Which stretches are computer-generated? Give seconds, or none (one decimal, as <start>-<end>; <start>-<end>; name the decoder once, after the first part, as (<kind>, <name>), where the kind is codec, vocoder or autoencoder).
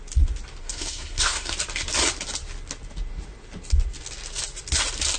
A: 0.6-1.5 (codec, SNAC)